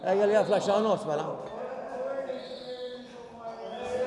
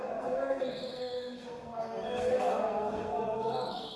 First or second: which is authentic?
first